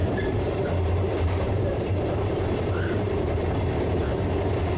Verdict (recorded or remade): remade